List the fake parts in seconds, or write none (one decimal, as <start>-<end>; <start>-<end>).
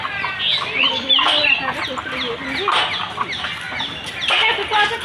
none